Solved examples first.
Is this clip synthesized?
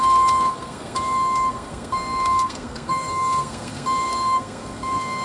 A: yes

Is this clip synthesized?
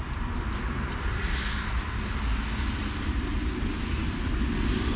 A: no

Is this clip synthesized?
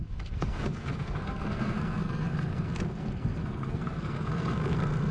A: yes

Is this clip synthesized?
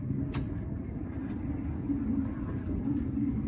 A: no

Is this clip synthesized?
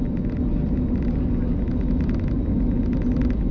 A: no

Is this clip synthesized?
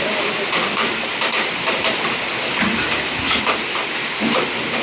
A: no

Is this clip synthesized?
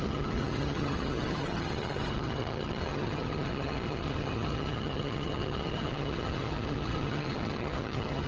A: yes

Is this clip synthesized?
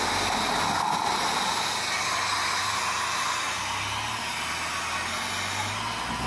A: no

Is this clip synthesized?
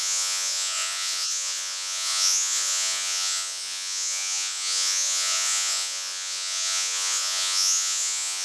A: yes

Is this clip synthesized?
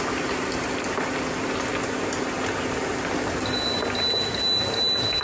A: no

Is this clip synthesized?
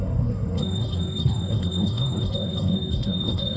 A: yes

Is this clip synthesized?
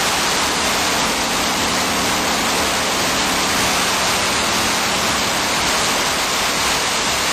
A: no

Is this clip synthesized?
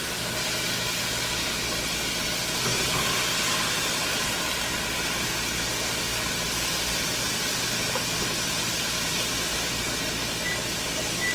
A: no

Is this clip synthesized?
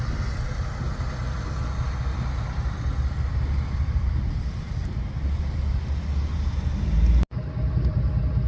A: no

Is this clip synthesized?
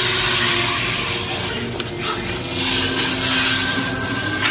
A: no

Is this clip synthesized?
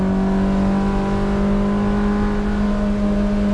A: no